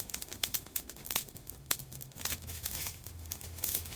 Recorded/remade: remade